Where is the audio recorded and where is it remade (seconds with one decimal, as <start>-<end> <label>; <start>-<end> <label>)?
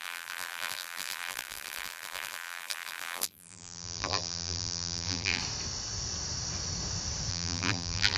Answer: 0.0-5.4 remade; 5.4-7.3 recorded; 7.3-8.2 remade